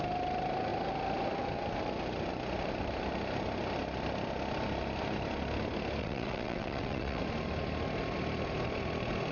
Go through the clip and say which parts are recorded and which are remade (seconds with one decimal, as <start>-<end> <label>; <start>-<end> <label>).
0.0-6.0 recorded; 6.0-7.2 remade; 7.2-9.3 recorded